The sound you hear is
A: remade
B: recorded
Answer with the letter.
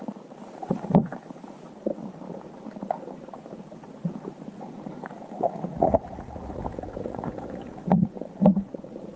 A